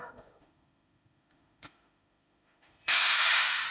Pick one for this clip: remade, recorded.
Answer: remade